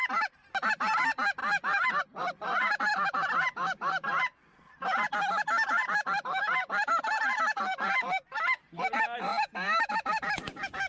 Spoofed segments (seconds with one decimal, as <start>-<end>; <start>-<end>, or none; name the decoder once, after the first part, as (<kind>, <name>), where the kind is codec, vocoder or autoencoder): none